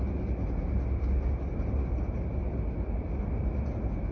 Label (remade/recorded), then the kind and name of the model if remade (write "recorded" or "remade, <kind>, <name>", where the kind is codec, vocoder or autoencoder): recorded